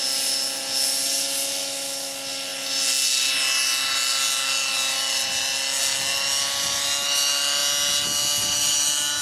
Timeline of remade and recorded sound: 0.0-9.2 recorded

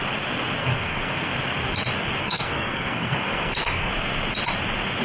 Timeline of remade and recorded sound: 0.0-0.6 recorded; 0.6-1.3 remade; 1.3-2.2 recorded; 2.2-3.9 remade; 3.9-5.0 recorded

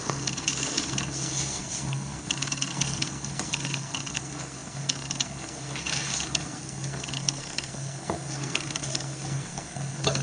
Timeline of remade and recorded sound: 0.0-10.2 remade

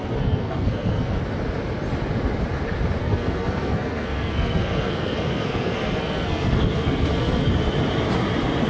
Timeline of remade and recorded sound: 0.0-1.2 remade; 1.2-3.0 recorded; 3.0-7.5 remade; 7.5-8.7 recorded

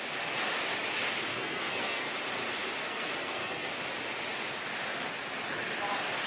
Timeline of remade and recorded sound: 0.0-1.3 recorded; 1.3-2.1 remade; 2.1-2.8 recorded; 2.8-3.7 remade; 3.7-6.3 recorded